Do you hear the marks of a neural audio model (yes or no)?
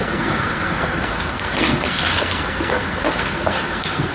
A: yes